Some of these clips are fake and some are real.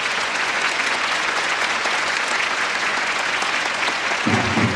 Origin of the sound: fake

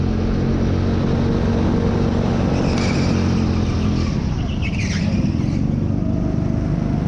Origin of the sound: real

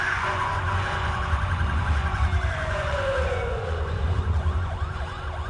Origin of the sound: fake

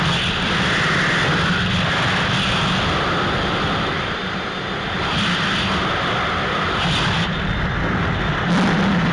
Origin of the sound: real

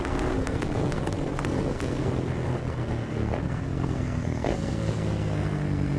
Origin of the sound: fake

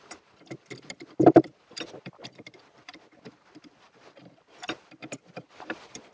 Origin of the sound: fake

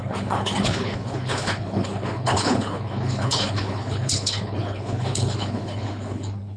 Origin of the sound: fake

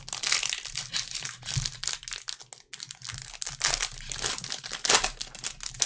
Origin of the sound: real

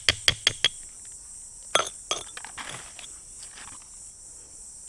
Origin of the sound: real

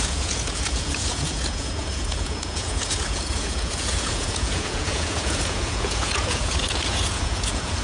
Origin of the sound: fake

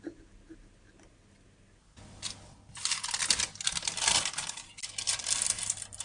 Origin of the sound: real